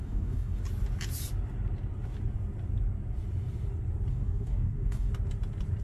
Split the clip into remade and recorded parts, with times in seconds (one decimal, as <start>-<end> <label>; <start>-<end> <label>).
0.0-0.6 remade; 0.6-4.1 recorded; 4.1-5.1 remade; 5.1-5.8 recorded